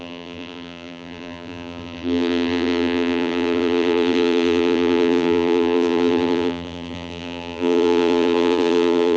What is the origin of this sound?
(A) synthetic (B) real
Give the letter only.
A